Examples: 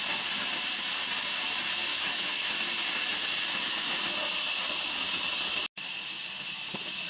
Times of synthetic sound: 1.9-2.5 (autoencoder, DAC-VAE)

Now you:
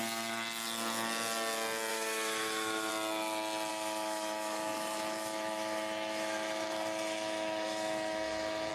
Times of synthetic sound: 1.9-2.9 (autoencoder, DAC-VAE); 3.7-8.7

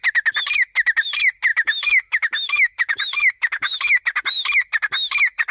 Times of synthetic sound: 1.5-4.0 (autoencoder, DAC-VAE)